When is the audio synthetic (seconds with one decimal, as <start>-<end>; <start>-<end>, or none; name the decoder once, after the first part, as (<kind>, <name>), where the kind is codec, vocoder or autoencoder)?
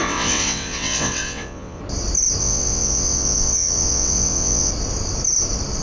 0.0-1.8 (vocoder, WaveNeXt); 2.4-4.7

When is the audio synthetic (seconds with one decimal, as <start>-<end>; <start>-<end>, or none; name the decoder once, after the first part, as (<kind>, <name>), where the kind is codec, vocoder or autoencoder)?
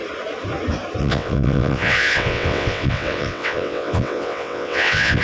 1.0-5.2 (vocoder, WaveNeXt)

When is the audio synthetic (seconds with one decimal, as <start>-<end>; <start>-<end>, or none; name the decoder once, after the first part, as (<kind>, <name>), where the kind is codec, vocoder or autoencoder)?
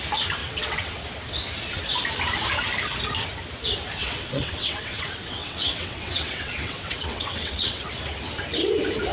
0.4-1.0 (vocoder, WaveNeXt); 4.0-7.9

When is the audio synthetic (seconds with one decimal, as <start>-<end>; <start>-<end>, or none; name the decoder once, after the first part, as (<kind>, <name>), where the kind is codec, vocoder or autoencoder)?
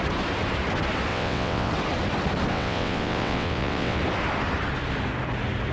1.1-1.7 (vocoder, WaveNeXt); 2.5-4.0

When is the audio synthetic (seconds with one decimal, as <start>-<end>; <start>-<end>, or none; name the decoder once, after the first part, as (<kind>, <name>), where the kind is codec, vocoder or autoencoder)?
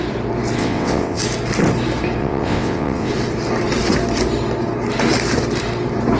0.6-1.2 (vocoder, WaveNeXt); 2.2-3.1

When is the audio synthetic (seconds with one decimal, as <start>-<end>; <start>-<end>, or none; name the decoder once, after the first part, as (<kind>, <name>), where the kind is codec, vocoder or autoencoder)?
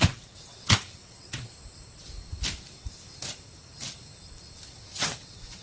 0.0-1.5 (vocoder, WaveNeXt); 4.7-5.6